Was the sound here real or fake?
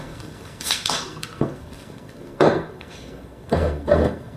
fake